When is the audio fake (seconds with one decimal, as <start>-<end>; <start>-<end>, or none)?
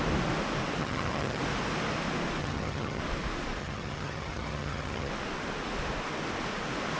0.8-1.4; 2.4-3.0; 3.6-5.1